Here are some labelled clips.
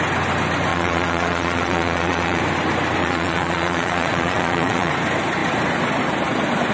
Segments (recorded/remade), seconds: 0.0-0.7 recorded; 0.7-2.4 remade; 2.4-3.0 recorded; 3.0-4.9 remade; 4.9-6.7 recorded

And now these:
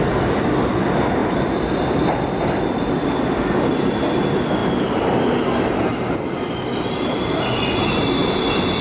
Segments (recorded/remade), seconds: 0.0-8.8 recorded

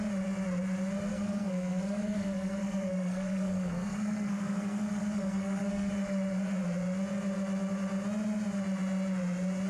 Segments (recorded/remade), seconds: 0.0-1.1 recorded; 1.1-5.9 remade; 5.9-9.7 recorded

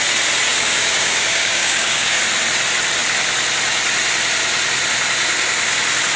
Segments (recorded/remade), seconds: 0.0-0.5 recorded; 0.5-2.2 remade; 2.2-6.2 recorded

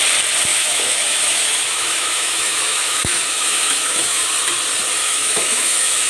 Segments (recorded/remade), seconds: 0.0-0.5 recorded; 0.5-4.2 remade; 4.2-5.0 recorded; 5.0-6.1 remade